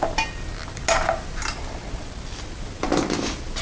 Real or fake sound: real